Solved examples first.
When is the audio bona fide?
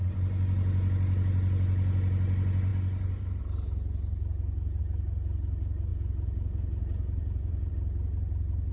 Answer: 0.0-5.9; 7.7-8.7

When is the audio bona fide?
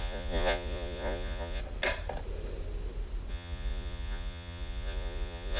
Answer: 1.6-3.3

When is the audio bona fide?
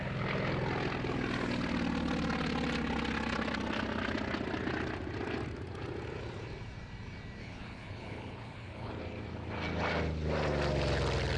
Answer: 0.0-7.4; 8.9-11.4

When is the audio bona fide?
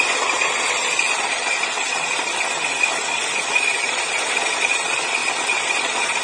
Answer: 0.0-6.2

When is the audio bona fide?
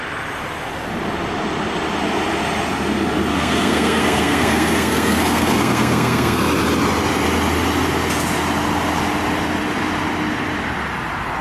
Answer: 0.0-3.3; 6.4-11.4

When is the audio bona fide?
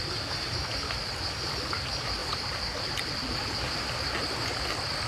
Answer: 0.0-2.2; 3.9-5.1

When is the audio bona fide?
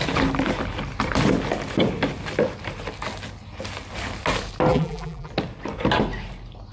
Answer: 0.0-4.7; 5.3-6.7